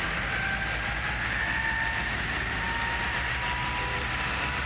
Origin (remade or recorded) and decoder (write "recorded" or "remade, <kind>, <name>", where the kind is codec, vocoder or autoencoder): recorded